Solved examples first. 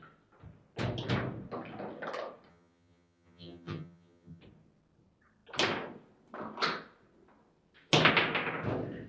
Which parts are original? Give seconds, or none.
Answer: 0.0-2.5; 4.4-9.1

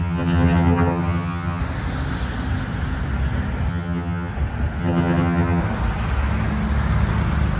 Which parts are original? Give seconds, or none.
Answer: 1.6-3.7; 4.3-4.8; 5.6-7.6

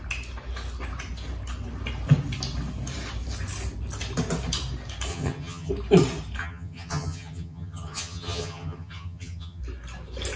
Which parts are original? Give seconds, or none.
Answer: 0.0-5.1; 5.7-6.4; 9.6-10.4

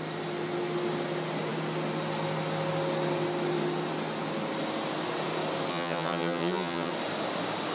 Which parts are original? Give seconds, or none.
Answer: 0.0-5.7; 6.9-7.7

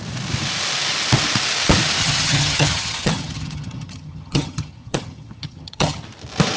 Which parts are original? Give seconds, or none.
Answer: 0.0-2.0; 6.0-6.6

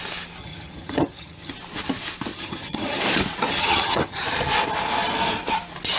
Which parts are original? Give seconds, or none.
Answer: 0.0-0.4; 1.5-2.3; 3.0-3.5; 4.2-6.0

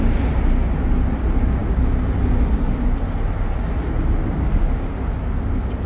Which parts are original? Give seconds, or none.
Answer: 0.0-5.9